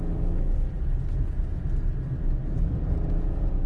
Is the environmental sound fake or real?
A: real